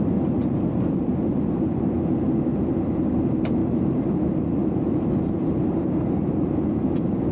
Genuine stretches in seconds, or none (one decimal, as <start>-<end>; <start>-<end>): 0.0-0.4; 1.0-3.6; 6.6-7.3